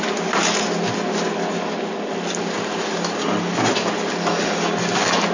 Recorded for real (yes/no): yes